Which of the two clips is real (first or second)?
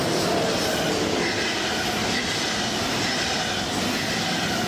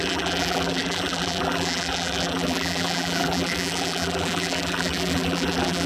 first